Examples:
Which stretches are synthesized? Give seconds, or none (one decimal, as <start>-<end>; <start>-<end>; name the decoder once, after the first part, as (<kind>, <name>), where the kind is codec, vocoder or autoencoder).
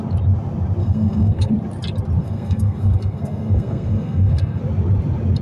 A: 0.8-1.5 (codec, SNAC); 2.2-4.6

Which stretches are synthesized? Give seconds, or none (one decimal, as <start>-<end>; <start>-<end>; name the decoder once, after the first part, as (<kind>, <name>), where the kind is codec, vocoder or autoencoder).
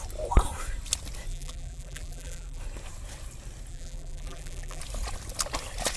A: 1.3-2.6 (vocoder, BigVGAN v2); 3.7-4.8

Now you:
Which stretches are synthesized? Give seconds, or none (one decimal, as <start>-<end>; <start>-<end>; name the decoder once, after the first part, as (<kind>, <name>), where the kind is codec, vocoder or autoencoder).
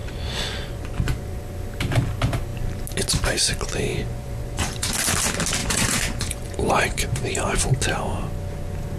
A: 0.0-1.4 (vocoder, Vocos); 3.9-4.9; 5.6-7.6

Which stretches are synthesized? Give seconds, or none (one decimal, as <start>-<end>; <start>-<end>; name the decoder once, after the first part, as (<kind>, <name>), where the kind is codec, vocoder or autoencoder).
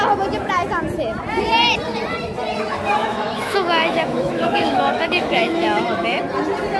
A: 3.0-6.2 (autoencoder, DAC-VAE)